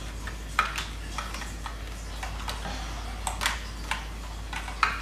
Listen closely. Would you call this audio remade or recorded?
recorded